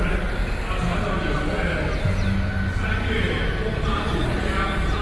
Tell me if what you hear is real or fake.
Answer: real